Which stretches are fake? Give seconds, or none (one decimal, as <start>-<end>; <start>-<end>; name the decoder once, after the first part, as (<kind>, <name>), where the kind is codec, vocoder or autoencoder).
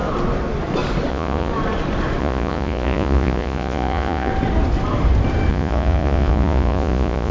1.1-1.5 (vocoder, Vocos); 2.2-4.3; 5.5-7.3